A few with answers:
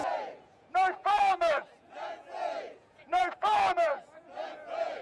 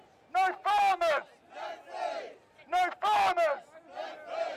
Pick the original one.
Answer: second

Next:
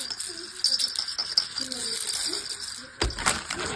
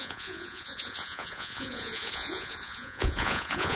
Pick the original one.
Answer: first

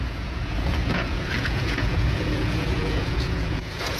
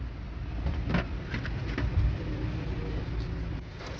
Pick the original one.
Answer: second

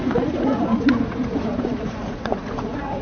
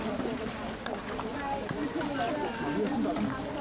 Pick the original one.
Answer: second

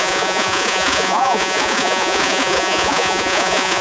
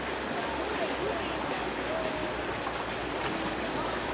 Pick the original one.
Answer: second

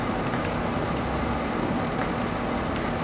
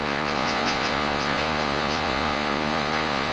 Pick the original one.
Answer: first